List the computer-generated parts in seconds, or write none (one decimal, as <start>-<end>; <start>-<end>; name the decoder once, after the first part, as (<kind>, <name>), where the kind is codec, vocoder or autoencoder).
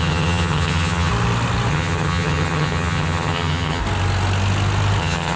0.0-1.1 (vocoder, HiFi-GAN); 1.7-3.8; 5.0-5.4